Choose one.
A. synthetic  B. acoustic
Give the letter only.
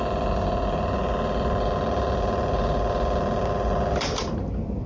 B